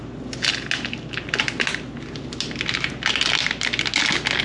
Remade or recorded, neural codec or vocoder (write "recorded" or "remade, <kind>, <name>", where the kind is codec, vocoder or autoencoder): recorded